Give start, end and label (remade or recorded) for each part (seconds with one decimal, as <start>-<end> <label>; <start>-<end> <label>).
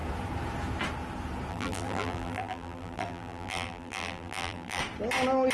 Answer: 0.0-1.5 recorded; 1.5-4.8 remade; 4.8-5.5 recorded